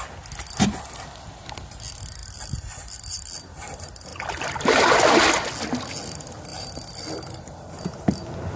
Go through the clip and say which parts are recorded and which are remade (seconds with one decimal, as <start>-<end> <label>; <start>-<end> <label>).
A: 0.0-2.2 recorded; 2.2-3.2 remade; 3.2-6.5 recorded; 6.5-7.7 remade; 7.7-8.6 recorded